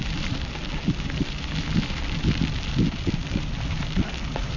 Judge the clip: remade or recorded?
recorded